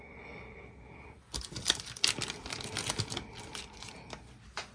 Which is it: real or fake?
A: real